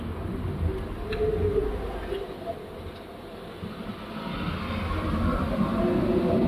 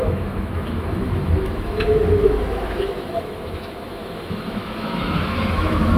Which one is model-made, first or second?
second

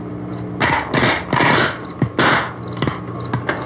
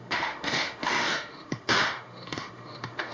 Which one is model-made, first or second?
second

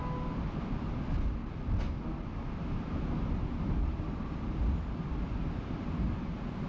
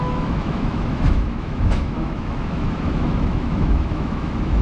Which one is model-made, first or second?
second